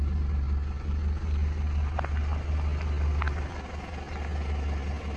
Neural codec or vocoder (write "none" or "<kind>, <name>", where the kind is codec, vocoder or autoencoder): none